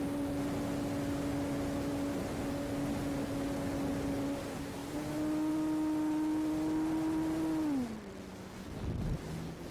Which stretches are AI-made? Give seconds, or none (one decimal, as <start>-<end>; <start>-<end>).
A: none